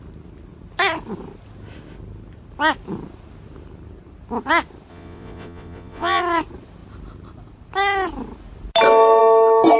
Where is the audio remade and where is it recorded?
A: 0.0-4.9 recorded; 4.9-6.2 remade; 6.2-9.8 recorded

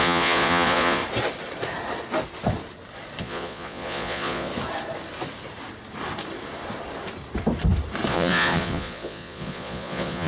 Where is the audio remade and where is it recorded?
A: 0.0-1.0 remade; 1.0-3.2 recorded; 3.2-4.5 remade; 4.5-8.1 recorded; 8.1-10.3 remade

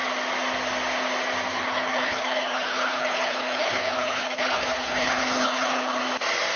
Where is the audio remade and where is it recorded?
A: 0.0-1.5 recorded; 1.5-6.0 remade; 6.0-6.6 recorded

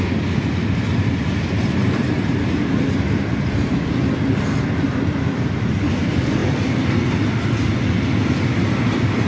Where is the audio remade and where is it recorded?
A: 0.0-1.8 recorded; 1.8-3.2 remade; 3.2-9.3 recorded

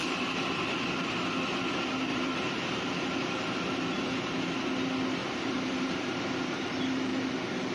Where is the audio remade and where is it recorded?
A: 0.0-0.6 remade; 0.6-2.1 recorded; 2.1-3.7 remade; 3.7-5.2 recorded; 5.2-6.6 remade; 6.6-7.7 recorded

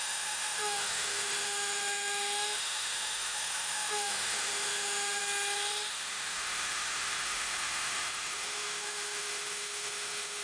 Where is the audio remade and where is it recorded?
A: 0.0-5.2 remade; 5.2-5.9 recorded; 5.9-10.4 remade

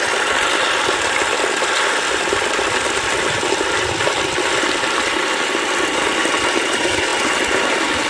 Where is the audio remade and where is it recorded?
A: 0.0-8.1 recorded

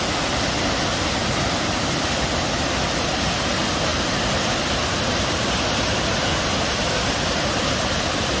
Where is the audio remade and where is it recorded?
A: 0.0-8.4 recorded